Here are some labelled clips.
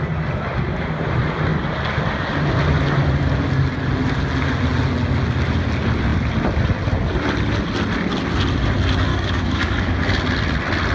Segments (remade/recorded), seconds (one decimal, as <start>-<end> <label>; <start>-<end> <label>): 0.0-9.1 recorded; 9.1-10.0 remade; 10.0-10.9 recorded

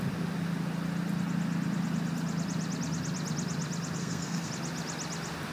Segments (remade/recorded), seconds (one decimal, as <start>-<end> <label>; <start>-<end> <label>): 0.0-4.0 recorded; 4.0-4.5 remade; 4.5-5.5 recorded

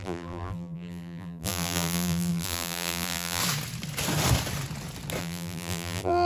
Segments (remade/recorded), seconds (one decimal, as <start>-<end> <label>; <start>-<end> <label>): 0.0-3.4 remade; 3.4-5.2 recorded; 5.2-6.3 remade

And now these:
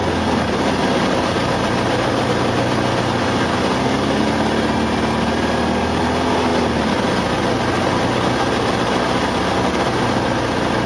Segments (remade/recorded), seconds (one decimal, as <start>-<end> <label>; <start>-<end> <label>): 0.0-10.9 recorded